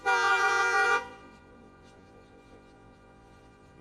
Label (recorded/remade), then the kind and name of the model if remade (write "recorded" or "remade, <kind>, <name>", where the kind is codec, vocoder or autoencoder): remade, vocoder, Vocos